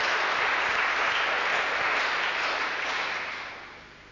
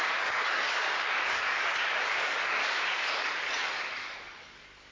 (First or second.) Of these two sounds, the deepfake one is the second